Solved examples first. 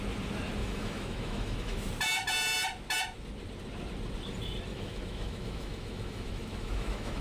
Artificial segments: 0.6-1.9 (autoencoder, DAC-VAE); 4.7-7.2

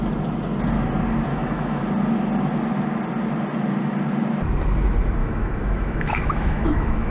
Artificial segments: 1.3-1.8 (autoencoder, DAC-VAE); 5.2-7.1

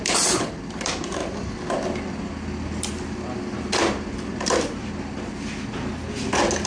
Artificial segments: none

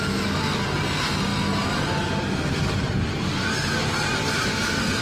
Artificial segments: none

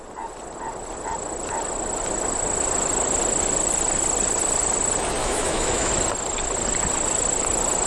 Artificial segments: 5.2-5.9 (autoencoder, DAC-VAE)

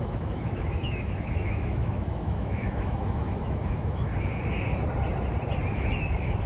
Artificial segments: 0.0-4.1 (autoencoder, DAC-VAE); 5.7-6.5